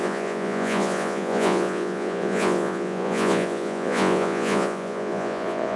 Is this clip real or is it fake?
fake